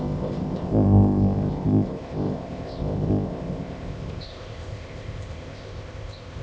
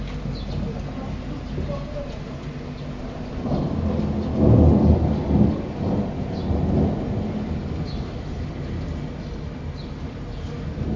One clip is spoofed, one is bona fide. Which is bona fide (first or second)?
second